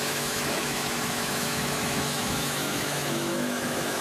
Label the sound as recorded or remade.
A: remade